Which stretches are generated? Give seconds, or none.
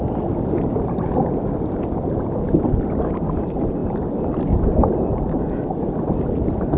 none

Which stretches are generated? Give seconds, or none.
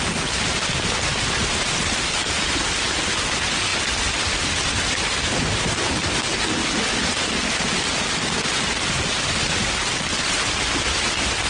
1.1-1.6 (vocoder, BigVGAN v2)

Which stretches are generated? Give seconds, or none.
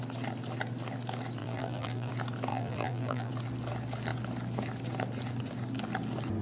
1.4-2.1 (vocoder, BigVGAN v2); 2.5-3.3